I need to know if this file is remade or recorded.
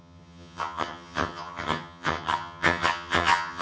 remade